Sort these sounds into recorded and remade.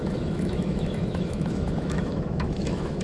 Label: remade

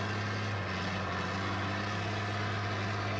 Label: recorded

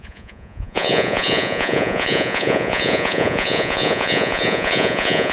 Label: remade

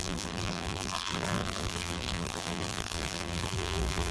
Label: remade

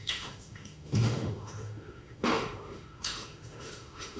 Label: remade